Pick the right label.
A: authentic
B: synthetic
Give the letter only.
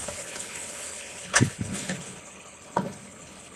B